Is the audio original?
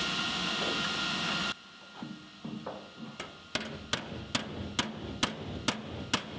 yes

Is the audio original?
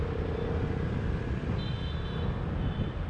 yes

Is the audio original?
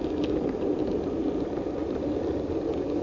yes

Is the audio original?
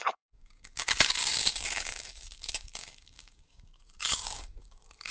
no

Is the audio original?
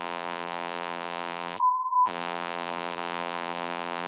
no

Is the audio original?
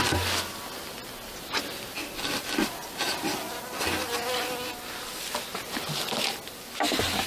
yes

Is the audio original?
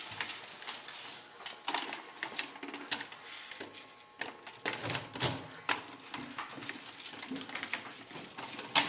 yes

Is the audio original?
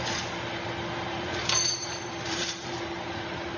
no